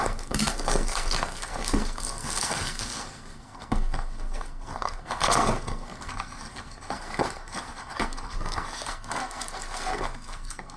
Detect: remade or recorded remade